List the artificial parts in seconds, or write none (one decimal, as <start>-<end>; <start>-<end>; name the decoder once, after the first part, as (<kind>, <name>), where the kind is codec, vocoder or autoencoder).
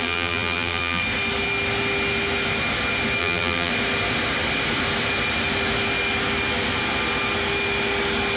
0.0-1.0 (vocoder, BigVGAN v2); 3.2-3.7